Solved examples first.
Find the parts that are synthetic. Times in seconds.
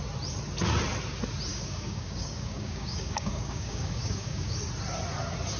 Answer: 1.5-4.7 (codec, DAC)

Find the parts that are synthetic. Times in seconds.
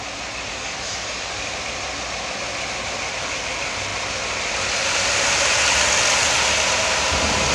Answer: 0.5-1.3 (codec, DAC)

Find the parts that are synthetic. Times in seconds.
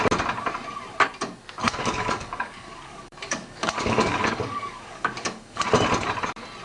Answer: 1.6-5.6 (codec, DAC)